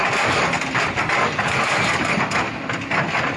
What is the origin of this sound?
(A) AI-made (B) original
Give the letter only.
B